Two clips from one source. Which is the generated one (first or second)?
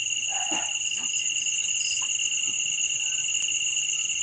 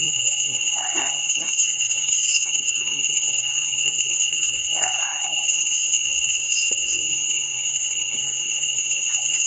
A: second